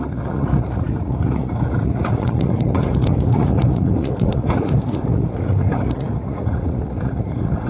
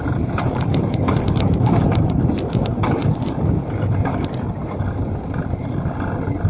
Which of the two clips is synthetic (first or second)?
first